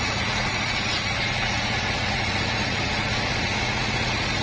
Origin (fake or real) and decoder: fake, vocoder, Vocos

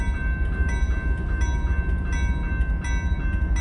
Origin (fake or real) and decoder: real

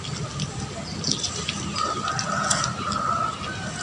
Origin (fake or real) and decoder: real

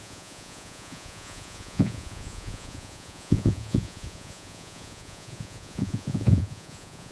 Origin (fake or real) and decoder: fake, vocoder, Vocos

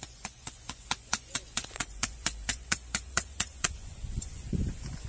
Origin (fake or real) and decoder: fake, vocoder, Vocos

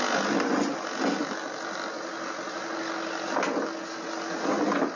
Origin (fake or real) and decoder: real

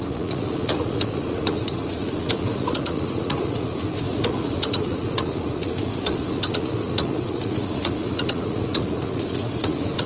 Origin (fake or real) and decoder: fake, vocoder, Vocos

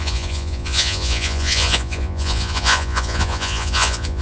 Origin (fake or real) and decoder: fake, vocoder, Vocos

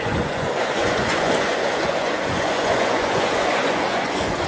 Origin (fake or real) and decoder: fake, vocoder, Vocos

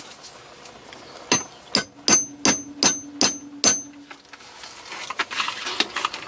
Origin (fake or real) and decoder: real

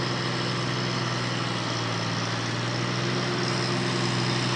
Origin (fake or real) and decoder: real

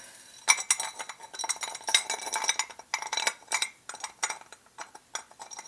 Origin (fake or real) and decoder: real